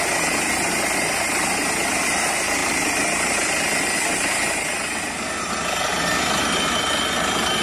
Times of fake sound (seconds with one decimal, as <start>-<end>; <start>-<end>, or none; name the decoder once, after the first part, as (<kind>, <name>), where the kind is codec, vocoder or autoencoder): none

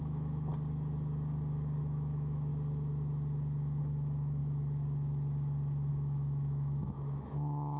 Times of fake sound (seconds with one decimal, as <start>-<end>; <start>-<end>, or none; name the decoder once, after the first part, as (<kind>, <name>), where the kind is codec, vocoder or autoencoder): 0.0-0.5 (autoencoder, DAC-VAE); 1.8-2.5; 3.8-4.4; 5.9-7.8

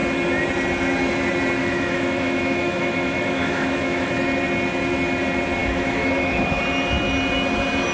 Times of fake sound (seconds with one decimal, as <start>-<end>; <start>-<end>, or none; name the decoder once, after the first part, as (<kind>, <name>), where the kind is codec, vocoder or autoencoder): 1.6-4.1 (autoencoder, DAC-VAE); 5.6-6.6

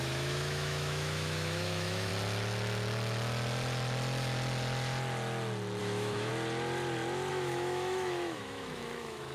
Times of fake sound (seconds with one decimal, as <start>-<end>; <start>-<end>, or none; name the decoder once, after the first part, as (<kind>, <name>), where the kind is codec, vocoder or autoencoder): 0.0-2.1 (autoencoder, DAC-VAE); 5.8-6.3; 7.3-9.3

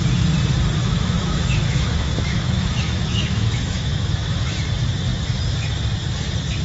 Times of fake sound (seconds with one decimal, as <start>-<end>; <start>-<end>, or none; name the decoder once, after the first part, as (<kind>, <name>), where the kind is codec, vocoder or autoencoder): 0.8-4.6 (autoencoder, DAC-VAE)

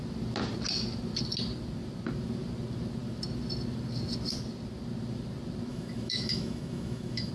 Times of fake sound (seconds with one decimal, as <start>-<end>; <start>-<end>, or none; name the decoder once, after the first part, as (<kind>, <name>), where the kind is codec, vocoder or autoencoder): 5.7-7.3 (autoencoder, DAC-VAE)

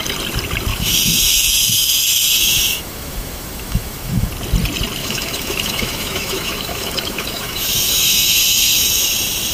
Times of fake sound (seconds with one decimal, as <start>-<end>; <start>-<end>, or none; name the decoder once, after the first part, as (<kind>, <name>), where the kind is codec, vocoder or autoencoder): 0.7-4.3 (autoencoder, DAC-VAE); 5.0-9.1

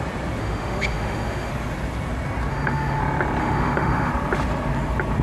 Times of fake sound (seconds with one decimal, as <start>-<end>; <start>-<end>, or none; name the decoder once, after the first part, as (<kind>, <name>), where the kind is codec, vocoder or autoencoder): 0.4-1.5 (autoencoder, DAC-VAE); 2.5-3.0; 3.4-4.1